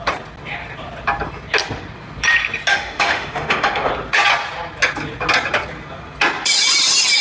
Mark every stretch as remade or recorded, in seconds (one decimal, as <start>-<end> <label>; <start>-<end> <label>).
0.0-2.7 recorded; 2.7-3.9 remade; 3.9-7.2 recorded